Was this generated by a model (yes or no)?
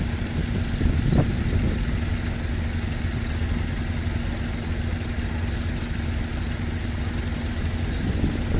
no